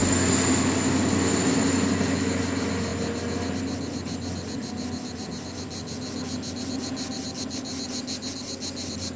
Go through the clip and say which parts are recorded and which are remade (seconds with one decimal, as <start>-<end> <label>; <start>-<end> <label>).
0.0-9.2 recorded